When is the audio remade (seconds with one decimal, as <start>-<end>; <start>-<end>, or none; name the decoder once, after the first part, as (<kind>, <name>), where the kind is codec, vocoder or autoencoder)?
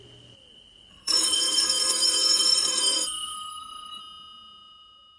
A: 0.9-4.0 (codec, SNAC)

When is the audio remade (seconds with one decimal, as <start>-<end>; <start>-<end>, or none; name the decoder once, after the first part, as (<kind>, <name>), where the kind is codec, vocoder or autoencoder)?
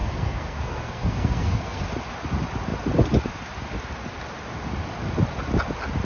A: 0.0-1.8 (codec, SNAC)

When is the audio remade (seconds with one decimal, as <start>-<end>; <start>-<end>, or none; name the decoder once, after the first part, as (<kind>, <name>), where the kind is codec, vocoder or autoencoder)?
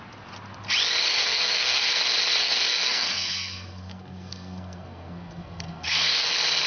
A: 1.2-2.0 (codec, SNAC); 2.4-6.3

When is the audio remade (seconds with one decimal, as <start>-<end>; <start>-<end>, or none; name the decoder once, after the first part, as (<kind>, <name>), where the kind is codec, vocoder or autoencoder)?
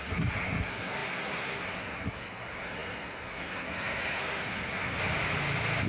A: 0.0-5.0 (codec, SNAC)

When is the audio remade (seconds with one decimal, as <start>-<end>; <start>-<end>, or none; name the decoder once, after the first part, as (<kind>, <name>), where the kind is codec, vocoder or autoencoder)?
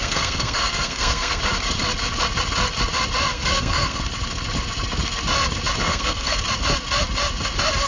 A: 0.0-1.4 (codec, SNAC); 3.3-4.0; 5.8-6.4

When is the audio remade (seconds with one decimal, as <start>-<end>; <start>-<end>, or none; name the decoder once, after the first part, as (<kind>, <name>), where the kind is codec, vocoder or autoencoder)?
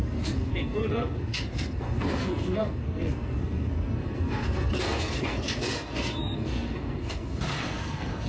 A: 0.0-8.3 (codec, SNAC)